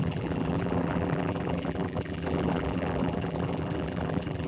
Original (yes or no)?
no